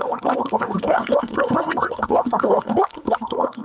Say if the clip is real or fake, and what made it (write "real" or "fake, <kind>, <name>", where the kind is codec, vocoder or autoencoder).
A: fake, codec, SNAC